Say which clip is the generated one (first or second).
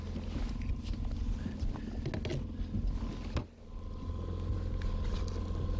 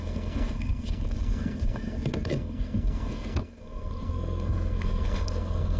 second